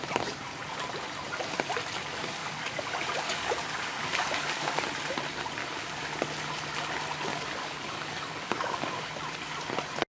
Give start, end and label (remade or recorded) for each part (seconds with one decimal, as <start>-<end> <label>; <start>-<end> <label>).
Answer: 0.0-2.4 recorded; 2.4-4.8 remade; 4.8-5.6 recorded; 5.6-6.3 remade; 6.3-7.3 recorded; 7.3-9.1 remade; 9.1-10.2 recorded